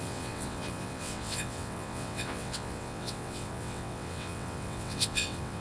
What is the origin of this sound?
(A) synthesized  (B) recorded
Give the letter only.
A